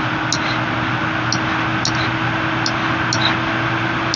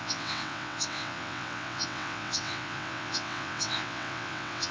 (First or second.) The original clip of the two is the first